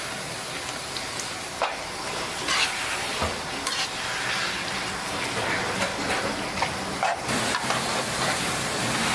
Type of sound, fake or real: real